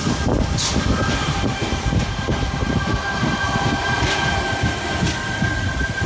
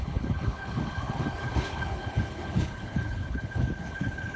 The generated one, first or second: second